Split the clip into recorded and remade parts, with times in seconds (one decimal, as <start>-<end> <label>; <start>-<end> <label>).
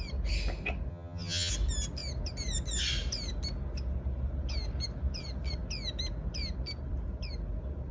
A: 0.0-0.9 recorded; 0.9-1.5 remade; 1.5-7.9 recorded